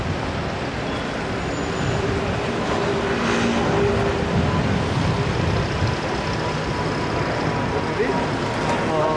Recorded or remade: recorded